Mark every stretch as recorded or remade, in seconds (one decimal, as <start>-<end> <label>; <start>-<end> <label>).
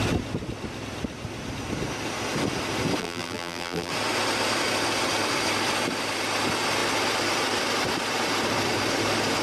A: 0.0-3.0 recorded; 3.0-3.9 remade; 3.9-9.4 recorded